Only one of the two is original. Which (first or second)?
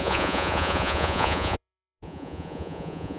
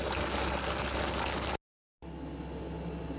second